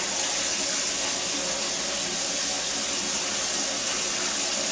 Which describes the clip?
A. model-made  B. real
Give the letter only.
B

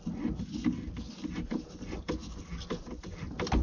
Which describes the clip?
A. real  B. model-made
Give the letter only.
A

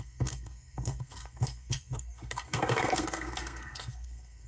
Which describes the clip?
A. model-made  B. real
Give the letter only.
A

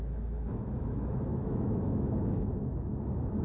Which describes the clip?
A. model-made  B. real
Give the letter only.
A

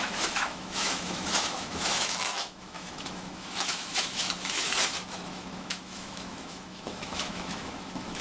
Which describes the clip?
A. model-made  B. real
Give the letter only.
A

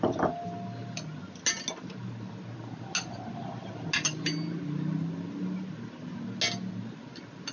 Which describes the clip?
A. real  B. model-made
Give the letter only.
A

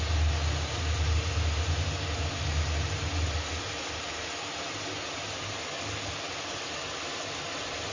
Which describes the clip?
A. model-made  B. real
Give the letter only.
B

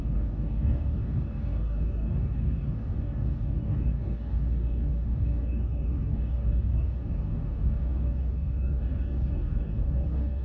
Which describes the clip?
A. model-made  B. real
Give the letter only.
A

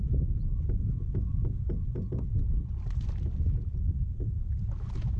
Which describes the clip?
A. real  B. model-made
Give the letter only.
A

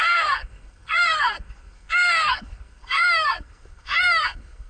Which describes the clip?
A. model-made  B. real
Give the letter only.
A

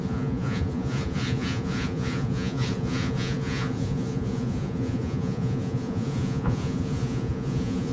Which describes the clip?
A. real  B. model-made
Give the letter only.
B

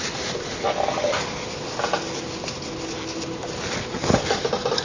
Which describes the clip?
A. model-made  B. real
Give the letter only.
B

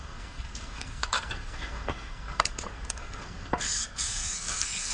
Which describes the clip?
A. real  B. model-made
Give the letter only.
B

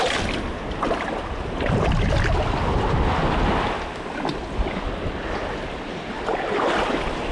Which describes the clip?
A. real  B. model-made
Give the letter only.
A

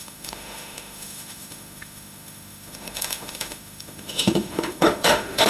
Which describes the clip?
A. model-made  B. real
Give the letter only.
A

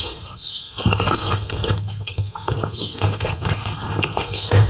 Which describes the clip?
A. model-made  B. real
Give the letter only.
A